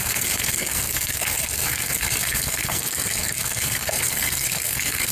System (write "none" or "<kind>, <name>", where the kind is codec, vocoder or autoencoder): codec, SNAC